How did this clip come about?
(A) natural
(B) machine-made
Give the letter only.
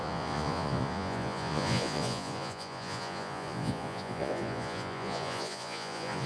B